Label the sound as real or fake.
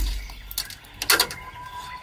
real